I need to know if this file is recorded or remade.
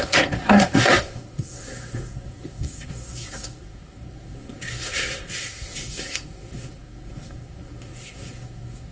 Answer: remade